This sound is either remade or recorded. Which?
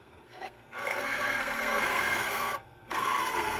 remade